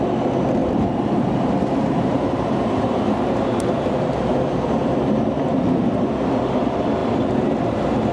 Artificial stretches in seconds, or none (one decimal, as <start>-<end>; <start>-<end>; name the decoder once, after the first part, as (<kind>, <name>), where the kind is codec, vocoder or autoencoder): 0.6-5.5 (vocoder, BigVGAN v2)